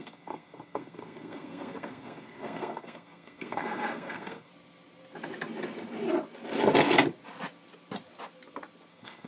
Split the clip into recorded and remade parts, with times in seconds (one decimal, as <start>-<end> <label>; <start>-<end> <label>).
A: 0.0-4.5 remade; 4.5-8.9 recorded; 8.9-9.3 remade